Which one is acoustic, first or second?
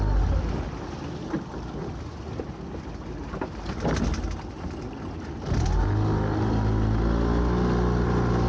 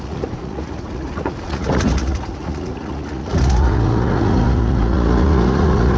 first